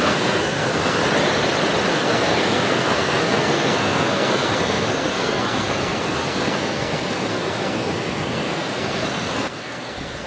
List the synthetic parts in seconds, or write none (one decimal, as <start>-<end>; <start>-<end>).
0.0-1.0; 1.9-10.3